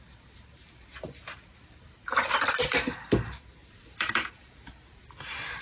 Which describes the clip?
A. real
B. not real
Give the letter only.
B